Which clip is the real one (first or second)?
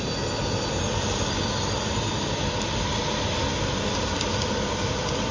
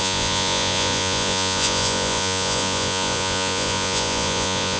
first